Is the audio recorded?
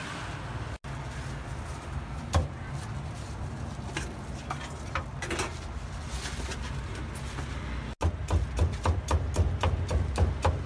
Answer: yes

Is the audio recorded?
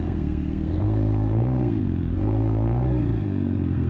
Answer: no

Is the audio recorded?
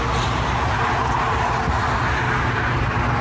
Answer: yes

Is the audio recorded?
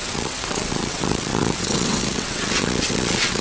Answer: no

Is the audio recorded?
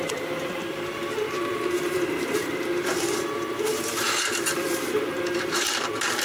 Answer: no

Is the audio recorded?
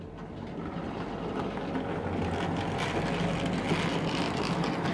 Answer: yes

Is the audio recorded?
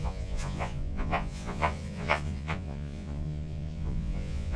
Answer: no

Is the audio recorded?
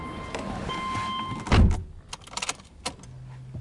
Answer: yes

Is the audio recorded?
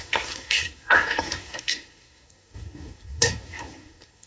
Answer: no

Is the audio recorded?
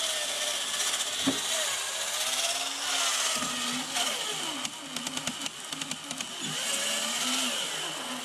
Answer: yes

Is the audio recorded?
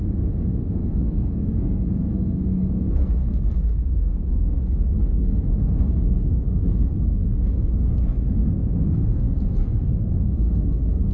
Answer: no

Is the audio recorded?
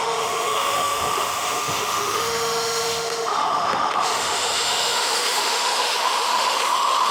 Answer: no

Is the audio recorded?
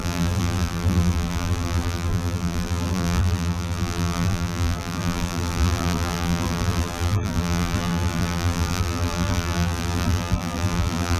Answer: no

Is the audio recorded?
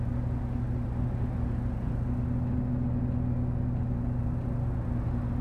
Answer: yes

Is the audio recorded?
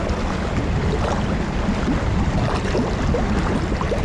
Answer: yes